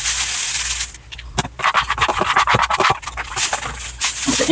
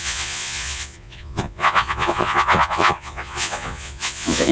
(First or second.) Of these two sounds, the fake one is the second